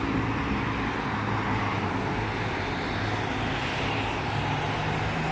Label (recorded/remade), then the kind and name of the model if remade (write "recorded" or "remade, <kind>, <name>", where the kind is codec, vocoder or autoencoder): recorded